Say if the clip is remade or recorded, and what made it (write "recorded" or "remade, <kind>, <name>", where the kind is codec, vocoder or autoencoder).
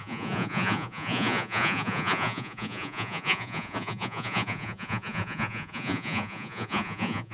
remade, vocoder, Vocos